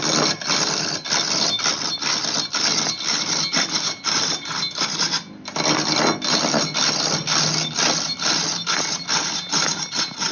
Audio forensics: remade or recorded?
recorded